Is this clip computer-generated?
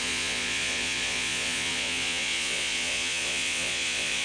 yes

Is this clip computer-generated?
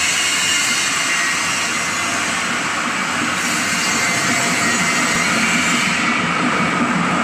no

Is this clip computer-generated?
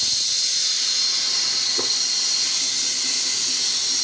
no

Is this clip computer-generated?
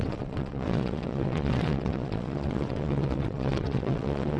yes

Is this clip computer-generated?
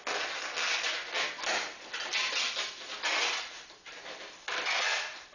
no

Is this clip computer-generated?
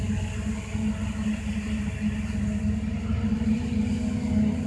no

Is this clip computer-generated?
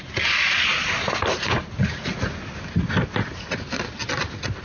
no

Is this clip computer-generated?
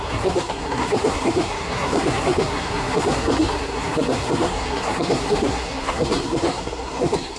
yes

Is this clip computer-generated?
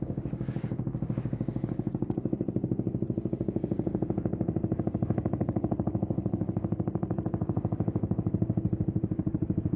yes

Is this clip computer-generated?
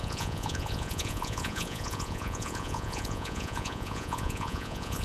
yes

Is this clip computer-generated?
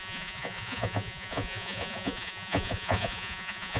yes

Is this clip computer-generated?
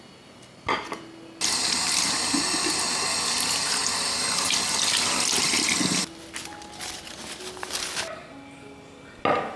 no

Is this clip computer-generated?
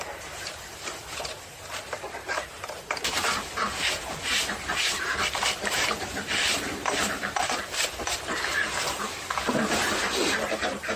yes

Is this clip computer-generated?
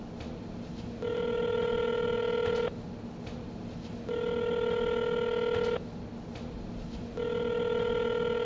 no